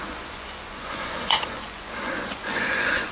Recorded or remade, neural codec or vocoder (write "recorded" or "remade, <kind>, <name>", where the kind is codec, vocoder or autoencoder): remade, vocoder, Vocos